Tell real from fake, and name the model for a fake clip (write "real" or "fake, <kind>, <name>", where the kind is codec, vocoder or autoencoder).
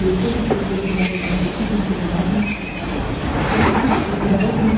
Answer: real